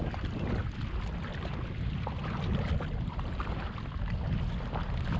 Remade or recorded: recorded